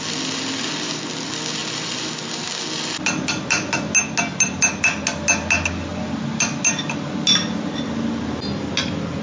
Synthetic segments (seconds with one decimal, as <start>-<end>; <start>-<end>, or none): none